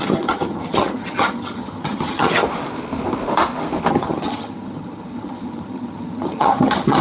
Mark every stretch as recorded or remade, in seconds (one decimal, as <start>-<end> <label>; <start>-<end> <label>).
0.0-2.3 remade; 2.3-3.9 recorded; 3.9-7.0 remade